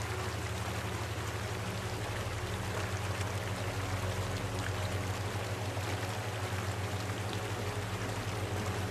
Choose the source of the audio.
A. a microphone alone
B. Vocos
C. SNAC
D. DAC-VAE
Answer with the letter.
A